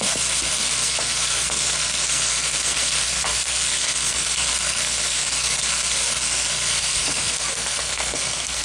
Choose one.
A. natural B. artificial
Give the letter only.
B